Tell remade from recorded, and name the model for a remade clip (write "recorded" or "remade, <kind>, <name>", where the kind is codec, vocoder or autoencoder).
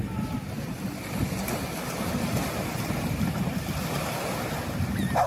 recorded